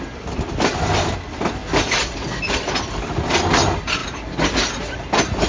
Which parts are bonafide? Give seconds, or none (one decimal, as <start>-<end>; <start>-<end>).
0.0-1.6; 3.3-4.0; 4.5-5.5

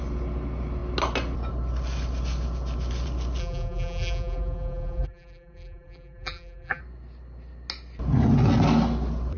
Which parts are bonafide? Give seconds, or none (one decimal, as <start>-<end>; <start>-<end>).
0.0-3.4; 6.8-9.4

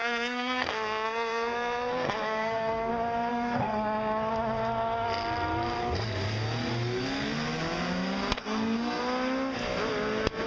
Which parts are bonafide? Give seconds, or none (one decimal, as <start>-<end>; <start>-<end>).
2.9-3.3; 4.3-8.4; 9.0-10.5

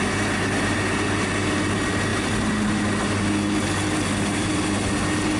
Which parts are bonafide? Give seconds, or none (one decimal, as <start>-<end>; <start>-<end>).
0.0-2.1; 2.6-5.4

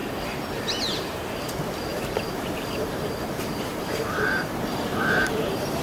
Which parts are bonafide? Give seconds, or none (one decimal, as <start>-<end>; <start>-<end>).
0.0-1.9

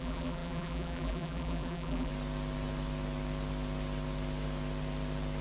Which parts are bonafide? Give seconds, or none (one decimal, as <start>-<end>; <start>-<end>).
2.1-5.4

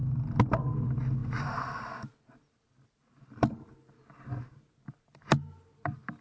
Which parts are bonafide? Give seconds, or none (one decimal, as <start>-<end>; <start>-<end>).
0.0-6.2